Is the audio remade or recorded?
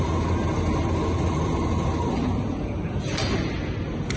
recorded